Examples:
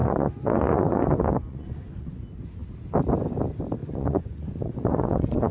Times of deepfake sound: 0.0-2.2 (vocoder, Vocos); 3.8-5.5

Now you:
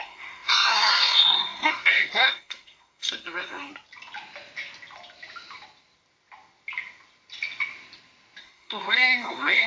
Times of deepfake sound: 0.0-3.7 (codec, SNAC); 8.4-9.7

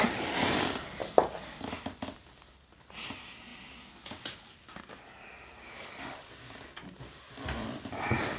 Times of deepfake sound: 0.0-1.0 (vocoder, BigVGAN v2); 1.7-3.5; 5.2-8.4

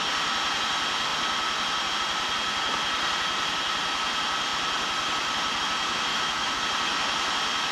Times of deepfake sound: 6.1-6.6 (autoencoder, DAC-VAE)

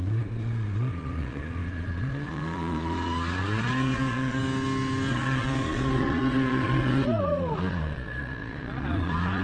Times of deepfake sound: 0.0-4.4 (vocoder, Vocos); 5.1-9.4

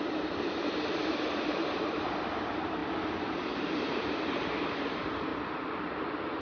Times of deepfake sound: 0.0-2.8 (vocoder, BigVGAN v2); 3.6-5.3; 5.8-6.4